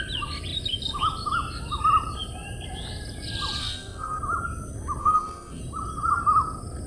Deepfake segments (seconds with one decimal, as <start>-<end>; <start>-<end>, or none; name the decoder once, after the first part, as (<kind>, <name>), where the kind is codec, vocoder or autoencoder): 3.6-4.2 (codec, SNAC); 5.0-5.6